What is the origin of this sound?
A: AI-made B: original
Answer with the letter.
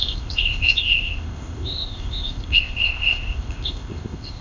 A